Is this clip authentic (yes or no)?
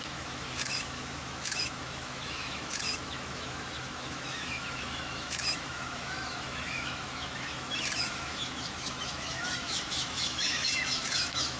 no